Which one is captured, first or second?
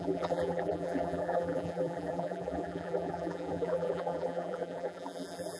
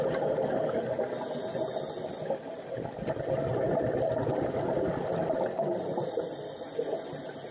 second